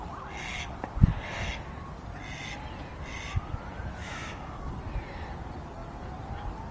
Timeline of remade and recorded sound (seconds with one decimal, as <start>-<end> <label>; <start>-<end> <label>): 0.0-4.0 recorded; 4.0-4.7 remade; 4.7-6.7 recorded